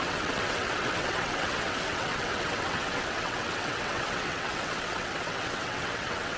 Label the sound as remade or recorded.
remade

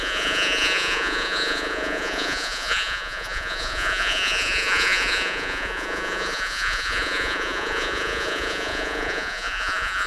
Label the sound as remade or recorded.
remade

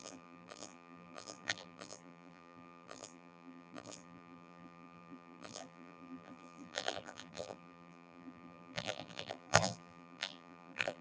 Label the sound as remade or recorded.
remade